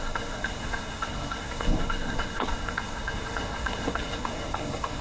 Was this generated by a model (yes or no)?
yes